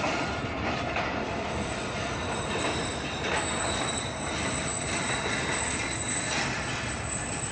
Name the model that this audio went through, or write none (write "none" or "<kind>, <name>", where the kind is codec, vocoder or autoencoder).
none